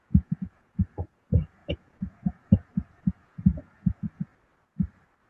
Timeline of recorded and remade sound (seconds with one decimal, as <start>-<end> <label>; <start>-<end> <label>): 0.0-4.3 remade; 4.3-5.3 recorded